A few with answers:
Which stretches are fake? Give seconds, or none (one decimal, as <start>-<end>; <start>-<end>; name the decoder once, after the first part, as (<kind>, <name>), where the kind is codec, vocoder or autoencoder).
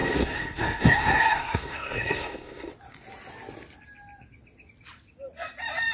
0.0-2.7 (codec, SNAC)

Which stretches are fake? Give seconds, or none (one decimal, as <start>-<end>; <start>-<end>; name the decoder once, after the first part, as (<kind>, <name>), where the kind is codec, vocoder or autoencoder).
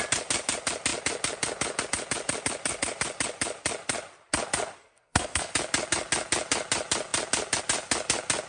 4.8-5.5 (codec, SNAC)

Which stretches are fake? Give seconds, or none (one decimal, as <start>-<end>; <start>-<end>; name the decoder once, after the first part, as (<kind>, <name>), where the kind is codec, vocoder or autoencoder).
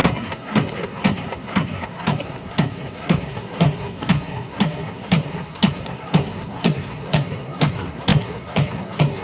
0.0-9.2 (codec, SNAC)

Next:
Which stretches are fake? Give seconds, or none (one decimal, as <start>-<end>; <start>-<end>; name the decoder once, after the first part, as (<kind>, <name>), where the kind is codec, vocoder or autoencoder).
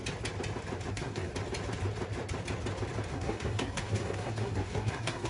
0.9-1.3 (codec, SNAC); 3.1-5.3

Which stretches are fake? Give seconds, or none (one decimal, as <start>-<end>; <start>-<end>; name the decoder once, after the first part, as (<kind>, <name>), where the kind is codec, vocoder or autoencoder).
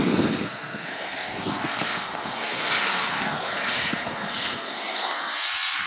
0.0-5.9 (codec, SNAC)